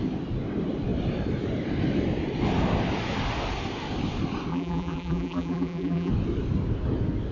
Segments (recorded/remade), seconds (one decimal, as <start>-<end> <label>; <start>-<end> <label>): 0.0-4.5 recorded; 4.5-6.1 remade; 6.1-7.3 recorded

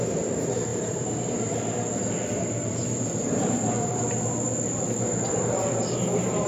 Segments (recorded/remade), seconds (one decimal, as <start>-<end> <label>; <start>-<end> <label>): 0.0-2.0 remade; 2.0-2.7 recorded; 2.7-3.9 remade; 3.9-5.3 recorded; 5.3-6.5 remade

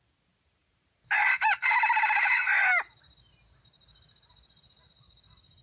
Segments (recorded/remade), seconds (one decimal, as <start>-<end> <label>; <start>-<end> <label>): 0.0-0.6 recorded; 0.6-2.3 remade; 2.3-5.6 recorded

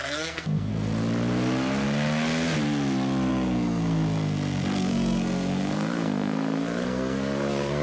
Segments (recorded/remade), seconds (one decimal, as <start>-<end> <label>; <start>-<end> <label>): 0.0-0.7 remade; 0.7-3.3 recorded; 3.3-7.8 remade

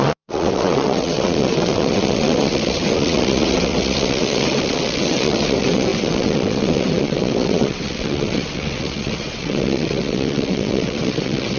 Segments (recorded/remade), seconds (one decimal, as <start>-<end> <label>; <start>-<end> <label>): 0.0-11.6 remade

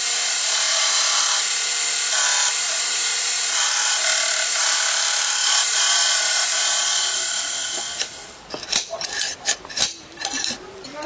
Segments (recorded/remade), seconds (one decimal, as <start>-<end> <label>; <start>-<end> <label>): 0.0-1.4 remade; 1.4-2.6 recorded; 2.6-7.6 remade; 7.6-8.6 recorded; 8.6-11.1 remade

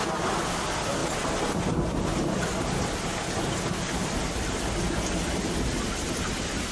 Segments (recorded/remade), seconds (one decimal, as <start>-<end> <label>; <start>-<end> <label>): 0.0-6.7 recorded